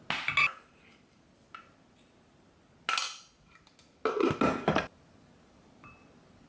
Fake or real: real